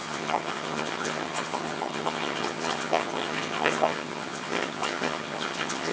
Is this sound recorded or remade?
remade